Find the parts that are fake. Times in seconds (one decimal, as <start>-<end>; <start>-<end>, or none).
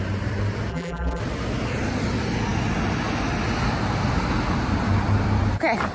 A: 0.7-1.2